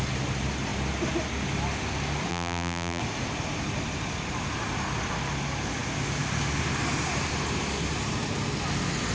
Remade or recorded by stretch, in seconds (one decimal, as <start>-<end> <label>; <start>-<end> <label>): 0.0-2.3 recorded; 2.3-3.0 remade; 3.0-9.1 recorded